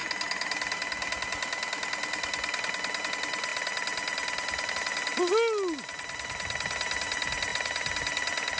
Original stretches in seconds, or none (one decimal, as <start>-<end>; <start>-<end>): 0.0-8.6